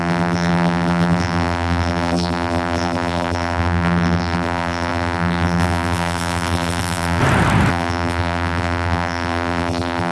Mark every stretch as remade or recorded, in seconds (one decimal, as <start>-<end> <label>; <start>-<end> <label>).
0.0-7.2 remade; 7.2-7.7 recorded; 7.7-10.1 remade